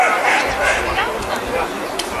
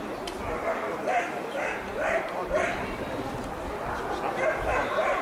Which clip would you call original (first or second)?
first